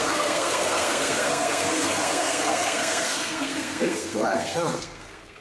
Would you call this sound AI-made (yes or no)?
yes